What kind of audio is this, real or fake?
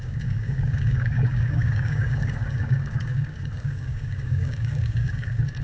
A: fake